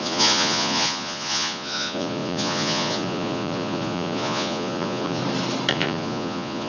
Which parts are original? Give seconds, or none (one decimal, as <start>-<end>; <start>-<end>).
5.2-5.7